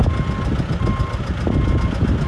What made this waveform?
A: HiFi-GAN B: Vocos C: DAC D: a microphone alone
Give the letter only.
D